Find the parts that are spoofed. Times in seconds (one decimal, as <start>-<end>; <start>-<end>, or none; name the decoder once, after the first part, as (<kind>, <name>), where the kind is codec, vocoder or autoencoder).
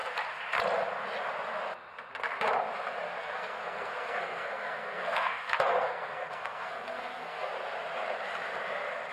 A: 3.2-7.5 (codec, SNAC)